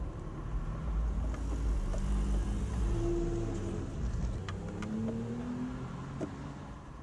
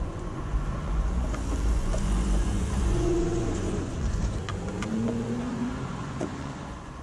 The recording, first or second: first